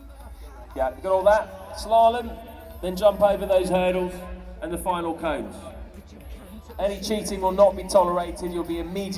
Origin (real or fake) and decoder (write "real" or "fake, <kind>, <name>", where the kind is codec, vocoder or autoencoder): real